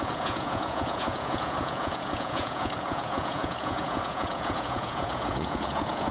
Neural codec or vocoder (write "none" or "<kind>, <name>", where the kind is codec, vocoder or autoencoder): vocoder, Vocos